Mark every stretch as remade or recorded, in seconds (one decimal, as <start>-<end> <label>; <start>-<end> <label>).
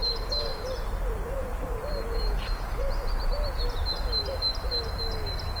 0.0-0.5 recorded; 0.5-3.9 remade; 3.9-5.6 recorded